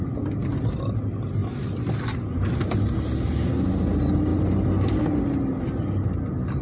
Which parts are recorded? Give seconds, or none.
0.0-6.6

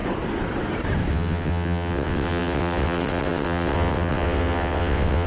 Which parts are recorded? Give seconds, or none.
0.0-1.1